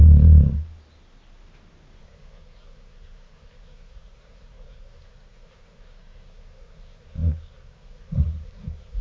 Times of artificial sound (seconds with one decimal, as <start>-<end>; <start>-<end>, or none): 2.0-9.0